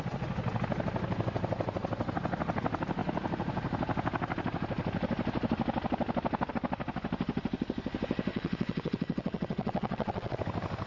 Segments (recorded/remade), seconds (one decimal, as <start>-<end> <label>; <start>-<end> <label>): 0.0-8.3 recorded; 8.3-10.4 remade; 10.4-10.9 recorded

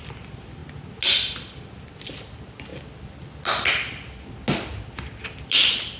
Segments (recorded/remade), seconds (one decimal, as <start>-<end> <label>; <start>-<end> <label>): 0.0-6.0 recorded

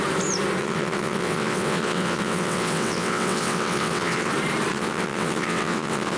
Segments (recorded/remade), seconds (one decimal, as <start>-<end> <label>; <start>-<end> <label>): 0.0-0.6 recorded; 0.6-4.3 remade; 4.3-4.7 recorded; 4.7-6.2 remade

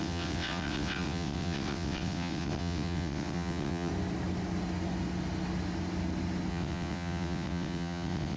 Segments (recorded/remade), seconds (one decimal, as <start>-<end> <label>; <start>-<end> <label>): 0.0-3.9 remade; 3.9-6.5 recorded; 6.5-8.4 remade

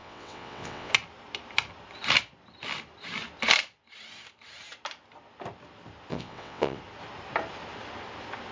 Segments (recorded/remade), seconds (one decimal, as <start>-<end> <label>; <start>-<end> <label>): 0.0-0.9 remade; 0.9-6.1 recorded; 6.1-6.8 remade; 6.8-8.5 recorded